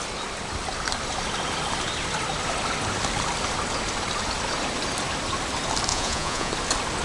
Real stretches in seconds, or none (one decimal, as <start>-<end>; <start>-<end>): 0.0-5.9; 6.5-7.0